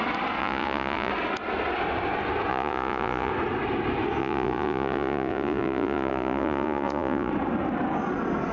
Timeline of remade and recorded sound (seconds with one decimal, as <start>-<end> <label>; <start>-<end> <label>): 0.0-0.4 recorded; 0.4-1.1 remade; 1.1-2.5 recorded; 2.5-3.3 remade; 3.3-4.2 recorded; 4.2-7.3 remade; 7.3-8.5 recorded